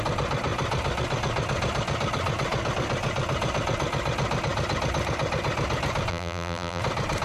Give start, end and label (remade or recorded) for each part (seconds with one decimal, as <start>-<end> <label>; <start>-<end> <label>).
0.0-6.1 recorded; 6.1-6.8 remade; 6.8-7.2 recorded